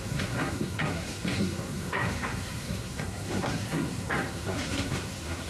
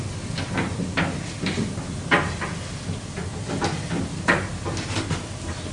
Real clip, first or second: second